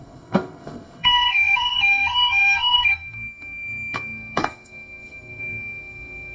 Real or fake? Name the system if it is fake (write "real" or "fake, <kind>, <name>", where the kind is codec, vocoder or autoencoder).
fake, codec, SNAC